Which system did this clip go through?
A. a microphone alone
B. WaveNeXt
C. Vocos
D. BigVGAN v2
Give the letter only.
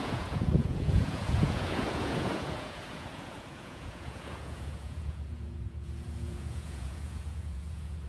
C